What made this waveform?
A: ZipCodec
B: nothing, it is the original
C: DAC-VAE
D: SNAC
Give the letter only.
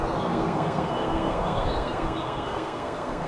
D